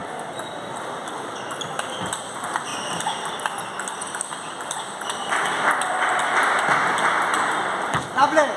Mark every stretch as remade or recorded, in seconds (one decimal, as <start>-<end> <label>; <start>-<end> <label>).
0.0-8.6 recorded